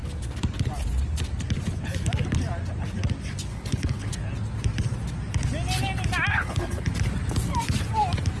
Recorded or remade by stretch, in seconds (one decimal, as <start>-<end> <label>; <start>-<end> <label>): 0.0-3.5 recorded; 3.5-4.1 remade; 4.1-6.3 recorded; 6.3-6.9 remade; 6.9-8.4 recorded